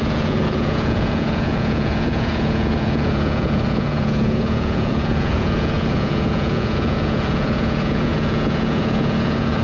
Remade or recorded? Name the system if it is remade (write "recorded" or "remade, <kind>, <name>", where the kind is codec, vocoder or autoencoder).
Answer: remade, vocoder, Vocos